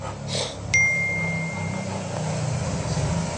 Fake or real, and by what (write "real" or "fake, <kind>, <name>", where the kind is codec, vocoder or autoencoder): real